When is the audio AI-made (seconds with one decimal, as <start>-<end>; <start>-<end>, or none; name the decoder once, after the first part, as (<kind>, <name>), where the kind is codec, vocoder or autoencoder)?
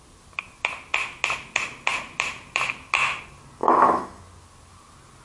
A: 3.6-4.2 (autoencoder, DAC-VAE)